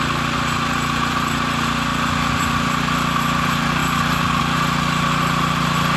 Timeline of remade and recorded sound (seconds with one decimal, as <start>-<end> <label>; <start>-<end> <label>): 0.0-6.0 recorded